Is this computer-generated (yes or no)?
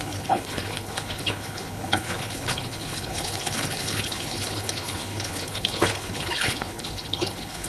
yes